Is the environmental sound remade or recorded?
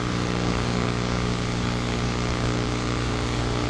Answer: remade